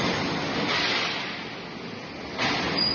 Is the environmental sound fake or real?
real